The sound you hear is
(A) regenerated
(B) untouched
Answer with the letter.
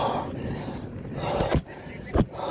A